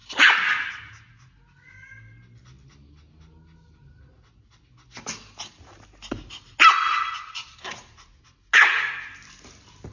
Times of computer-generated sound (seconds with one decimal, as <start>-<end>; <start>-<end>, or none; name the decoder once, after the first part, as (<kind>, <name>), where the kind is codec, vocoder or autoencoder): 6.9-7.7 (vocoder, BigVGAN v2)